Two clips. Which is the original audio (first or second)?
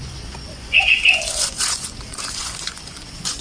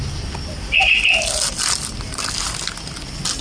second